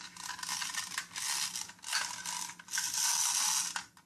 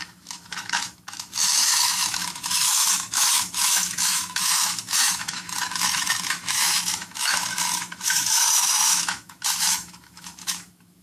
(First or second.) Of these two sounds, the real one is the first